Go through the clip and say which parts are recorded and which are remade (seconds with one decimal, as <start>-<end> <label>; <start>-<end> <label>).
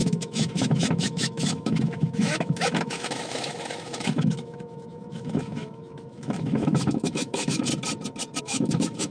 0.0-7.7 remade; 7.7-8.4 recorded; 8.4-9.1 remade